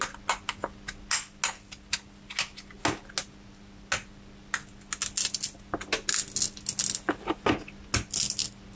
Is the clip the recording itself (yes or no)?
yes